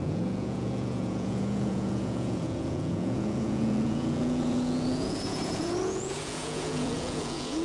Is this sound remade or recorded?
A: remade